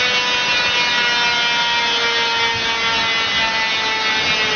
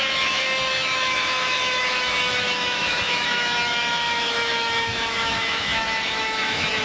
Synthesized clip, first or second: second